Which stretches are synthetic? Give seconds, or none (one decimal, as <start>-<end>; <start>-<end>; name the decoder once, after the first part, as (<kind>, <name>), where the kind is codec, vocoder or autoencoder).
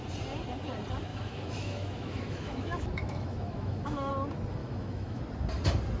1.1-4.1 (autoencoder, DAC-VAE); 4.6-5.2